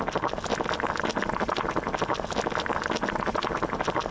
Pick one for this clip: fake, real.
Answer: real